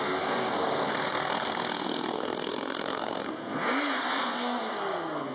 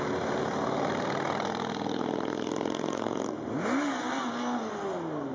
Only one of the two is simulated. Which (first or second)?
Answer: first